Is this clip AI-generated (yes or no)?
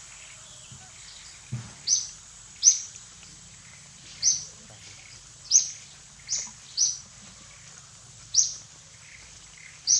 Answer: yes